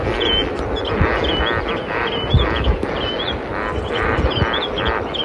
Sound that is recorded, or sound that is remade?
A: recorded